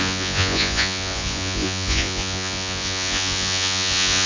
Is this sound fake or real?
fake